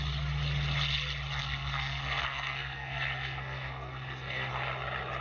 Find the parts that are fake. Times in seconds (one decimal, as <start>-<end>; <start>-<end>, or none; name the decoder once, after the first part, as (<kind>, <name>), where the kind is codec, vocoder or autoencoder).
1.4-4.5 (codec, SNAC)